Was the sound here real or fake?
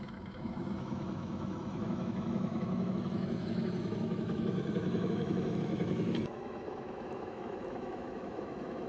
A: fake